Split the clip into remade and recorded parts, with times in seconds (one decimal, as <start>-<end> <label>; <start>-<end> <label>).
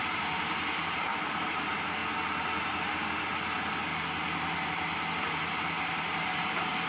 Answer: 0.0-2.0 remade; 2.0-3.3 recorded; 3.3-3.9 remade; 3.9-5.3 recorded; 5.3-6.9 remade